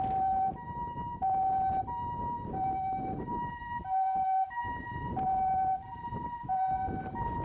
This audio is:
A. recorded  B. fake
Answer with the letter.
A